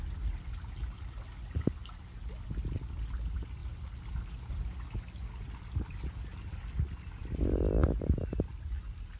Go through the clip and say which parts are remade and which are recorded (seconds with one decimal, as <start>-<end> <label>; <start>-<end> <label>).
0.0-9.2 recorded